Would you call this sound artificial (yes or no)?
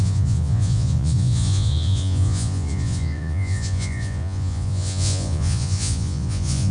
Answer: yes